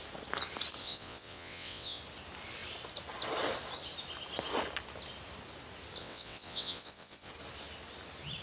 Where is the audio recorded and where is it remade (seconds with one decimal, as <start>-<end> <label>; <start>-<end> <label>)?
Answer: 0.0-0.8 recorded; 0.8-2.0 remade; 2.0-6.0 recorded; 6.0-7.3 remade; 7.3-8.4 recorded

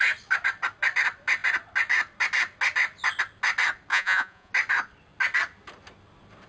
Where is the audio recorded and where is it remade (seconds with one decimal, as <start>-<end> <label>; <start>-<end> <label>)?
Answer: 0.0-3.9 recorded; 3.9-4.5 remade; 4.5-6.5 recorded

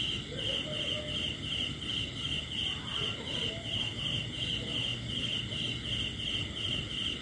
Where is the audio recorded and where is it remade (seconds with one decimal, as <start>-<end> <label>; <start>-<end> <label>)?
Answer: 0.0-7.2 recorded

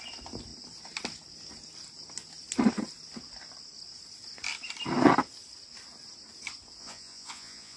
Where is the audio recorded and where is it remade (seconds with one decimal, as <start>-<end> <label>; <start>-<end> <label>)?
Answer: 0.0-6.8 recorded; 6.8-7.8 remade

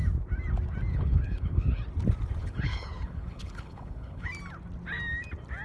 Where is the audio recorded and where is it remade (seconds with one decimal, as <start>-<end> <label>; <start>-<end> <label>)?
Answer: 0.0-0.9 recorded; 0.9-1.8 remade; 1.8-2.4 recorded; 2.4-4.3 remade; 4.3-5.6 recorded

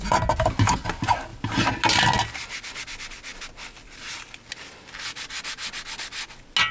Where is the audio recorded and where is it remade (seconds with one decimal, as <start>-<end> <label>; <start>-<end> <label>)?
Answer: 0.0-6.7 recorded